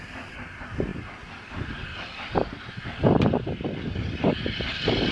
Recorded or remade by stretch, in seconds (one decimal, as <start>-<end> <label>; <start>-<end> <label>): 0.0-5.1 recorded